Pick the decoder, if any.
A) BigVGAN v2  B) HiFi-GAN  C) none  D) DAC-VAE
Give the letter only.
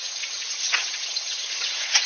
B